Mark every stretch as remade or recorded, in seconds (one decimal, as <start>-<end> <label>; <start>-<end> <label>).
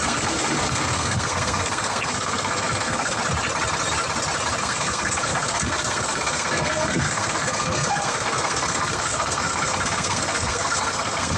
0.0-3.2 remade; 3.2-4.6 recorded; 4.6-11.4 remade